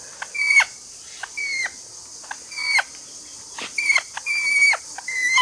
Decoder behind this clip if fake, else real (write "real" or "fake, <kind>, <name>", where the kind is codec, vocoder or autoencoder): real